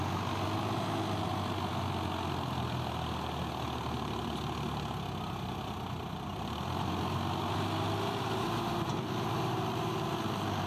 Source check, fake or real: real